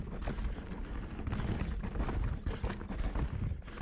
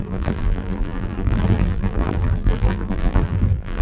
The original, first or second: first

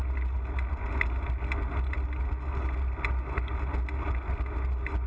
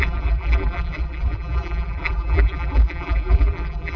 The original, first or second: first